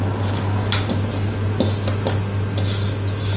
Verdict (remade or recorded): recorded